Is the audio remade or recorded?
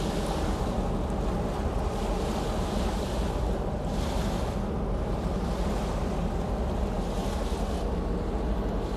recorded